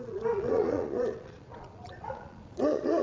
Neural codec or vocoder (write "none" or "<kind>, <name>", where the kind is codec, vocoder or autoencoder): vocoder, Vocos